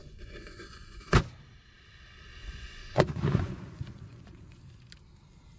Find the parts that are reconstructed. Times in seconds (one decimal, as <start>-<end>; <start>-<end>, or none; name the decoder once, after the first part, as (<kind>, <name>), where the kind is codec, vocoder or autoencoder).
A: 0.0-1.0 (vocoder, Vocos); 2.4-4.6